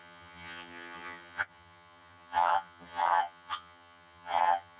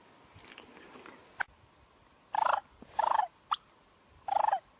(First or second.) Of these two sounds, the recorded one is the second